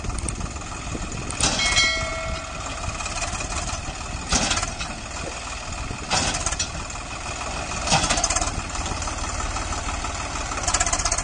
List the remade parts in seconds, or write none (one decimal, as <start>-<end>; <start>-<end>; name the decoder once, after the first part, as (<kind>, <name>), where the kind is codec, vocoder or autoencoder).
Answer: none